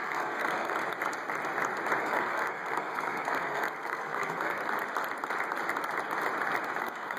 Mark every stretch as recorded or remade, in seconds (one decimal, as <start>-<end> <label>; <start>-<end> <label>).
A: 0.0-0.8 remade; 0.8-2.0 recorded; 2.0-4.6 remade; 4.6-6.8 recorded; 6.8-7.2 remade

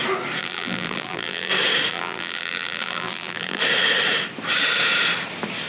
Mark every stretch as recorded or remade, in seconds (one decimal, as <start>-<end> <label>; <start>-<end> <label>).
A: 0.0-0.4 recorded; 0.4-1.5 remade; 1.5-1.9 recorded; 1.9-3.6 remade; 3.6-5.7 recorded